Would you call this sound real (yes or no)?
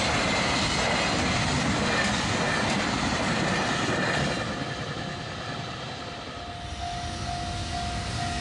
yes